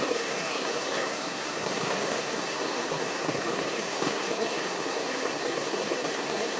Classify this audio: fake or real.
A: fake